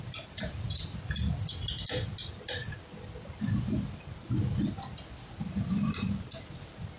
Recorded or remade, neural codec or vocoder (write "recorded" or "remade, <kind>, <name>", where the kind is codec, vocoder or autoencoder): recorded